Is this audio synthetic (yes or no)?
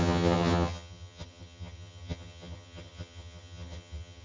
yes